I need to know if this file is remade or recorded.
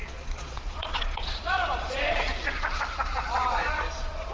remade